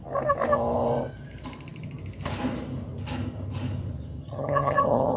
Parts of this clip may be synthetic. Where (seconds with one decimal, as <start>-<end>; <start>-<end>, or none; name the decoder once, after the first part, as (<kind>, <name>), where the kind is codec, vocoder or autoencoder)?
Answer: 4.2-5.2 (vocoder, HiFi-GAN)